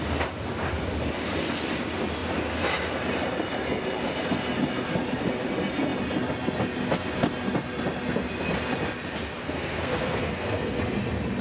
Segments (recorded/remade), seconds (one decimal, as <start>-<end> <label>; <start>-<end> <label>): 0.0-9.4 recorded; 9.4-10.8 remade; 10.8-11.4 recorded